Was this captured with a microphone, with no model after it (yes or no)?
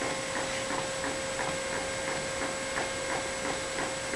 yes